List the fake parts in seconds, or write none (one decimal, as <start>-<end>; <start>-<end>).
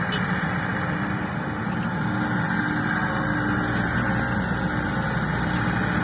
none